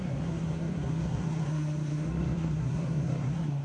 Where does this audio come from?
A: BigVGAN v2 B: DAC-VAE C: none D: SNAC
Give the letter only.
D